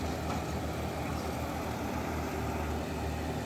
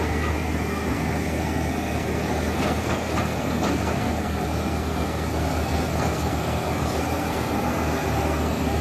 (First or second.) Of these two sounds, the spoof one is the second